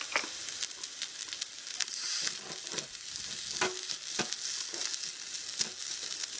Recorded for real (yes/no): yes